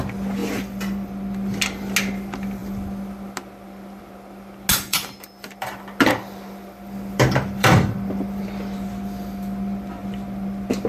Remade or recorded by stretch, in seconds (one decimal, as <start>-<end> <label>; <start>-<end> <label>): 0.0-0.4 recorded; 0.4-1.1 remade; 1.1-4.7 recorded; 4.7-8.4 remade; 8.4-10.9 recorded